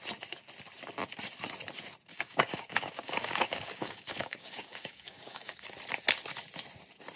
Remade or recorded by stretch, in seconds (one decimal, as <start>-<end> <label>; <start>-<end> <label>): 0.0-2.1 recorded; 2.1-5.7 remade; 5.7-7.2 recorded